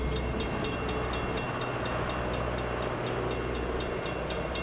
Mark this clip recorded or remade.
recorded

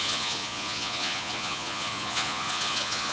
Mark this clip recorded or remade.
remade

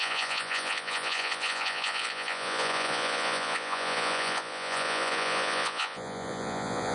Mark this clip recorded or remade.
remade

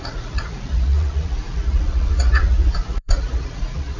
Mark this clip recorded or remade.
remade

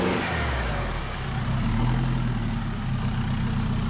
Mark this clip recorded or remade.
recorded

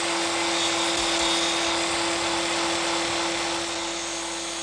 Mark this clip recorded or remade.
recorded